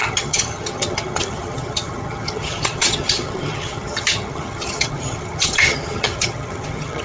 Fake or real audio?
fake